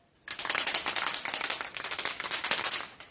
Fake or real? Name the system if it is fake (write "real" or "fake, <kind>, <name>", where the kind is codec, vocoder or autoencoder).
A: real